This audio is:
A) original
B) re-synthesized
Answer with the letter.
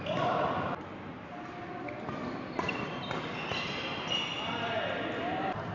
A